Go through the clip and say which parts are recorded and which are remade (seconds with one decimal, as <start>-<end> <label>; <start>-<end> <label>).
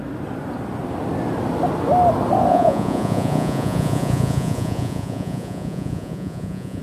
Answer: 0.0-2.5 recorded; 2.5-6.8 remade